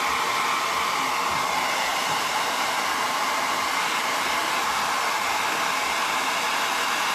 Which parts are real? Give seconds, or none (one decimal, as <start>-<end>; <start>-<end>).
0.0-1.9; 4.7-7.1